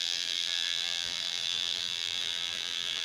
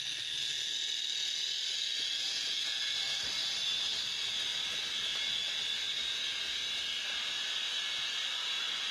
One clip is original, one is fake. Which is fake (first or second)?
first